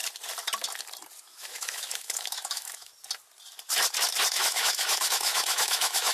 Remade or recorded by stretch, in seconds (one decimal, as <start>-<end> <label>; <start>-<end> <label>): 0.0-1.2 recorded; 1.2-2.9 remade; 2.9-4.3 recorded; 4.3-6.1 remade